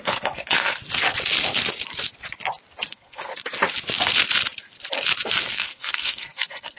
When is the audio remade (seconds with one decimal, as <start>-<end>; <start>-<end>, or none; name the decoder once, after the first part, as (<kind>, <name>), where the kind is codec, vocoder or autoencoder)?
0.0-0.8 (codec, SNAC); 2.9-3.3; 5.5-6.8